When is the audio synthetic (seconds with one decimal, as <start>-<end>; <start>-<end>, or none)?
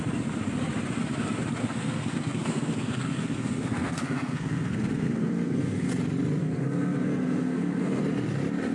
1.6-5.9; 6.4-8.0